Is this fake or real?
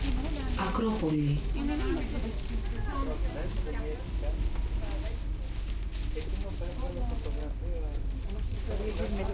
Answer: real